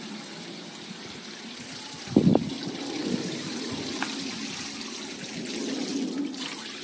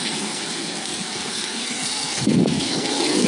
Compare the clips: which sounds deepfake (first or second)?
second